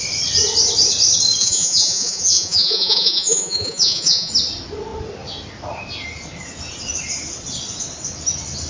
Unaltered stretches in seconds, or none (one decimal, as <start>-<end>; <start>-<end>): 0.0-1.4; 4.3-8.7